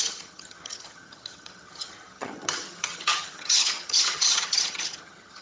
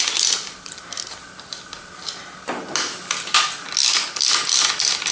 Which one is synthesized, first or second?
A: first